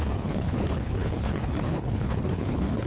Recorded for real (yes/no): no